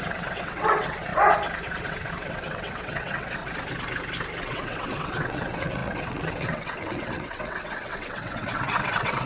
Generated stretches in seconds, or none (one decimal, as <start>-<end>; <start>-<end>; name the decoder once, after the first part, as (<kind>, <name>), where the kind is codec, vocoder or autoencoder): 0.0-1.1 (vocoder, WaveNeXt); 1.8-3.4; 4.4-9.3